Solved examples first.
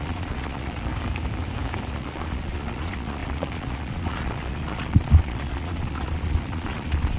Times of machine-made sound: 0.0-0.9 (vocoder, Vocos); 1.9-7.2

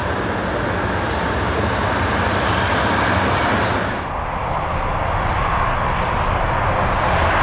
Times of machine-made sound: none

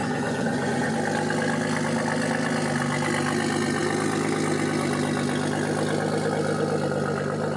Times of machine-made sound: 0.0-0.9 (vocoder, Vocos)

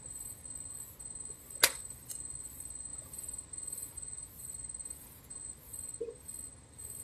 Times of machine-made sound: 2.9-4.3 (vocoder, Vocos); 4.8-5.4

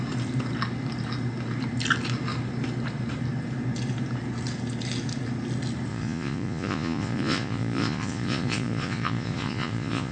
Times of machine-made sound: 5.9-10.1 (vocoder, Vocos)

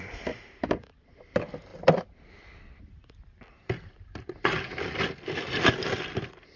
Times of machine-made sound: none

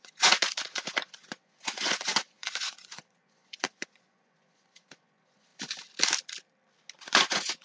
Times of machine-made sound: 0.0-5.5 (vocoder, Vocos); 7.0-7.6

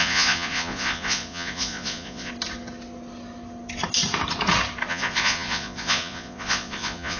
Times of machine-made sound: 0.0-2.3 (vocoder, Vocos); 4.9-7.2